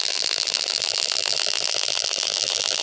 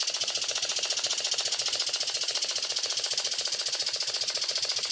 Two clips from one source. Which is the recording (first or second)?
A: second